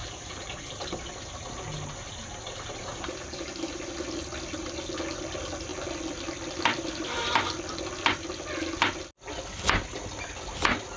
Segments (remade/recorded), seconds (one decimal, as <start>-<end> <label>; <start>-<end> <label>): 0.0-3.9 remade; 3.9-11.0 recorded